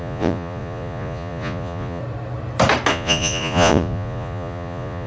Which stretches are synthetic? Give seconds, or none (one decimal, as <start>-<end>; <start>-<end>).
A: 0.0-2.0; 2.9-5.1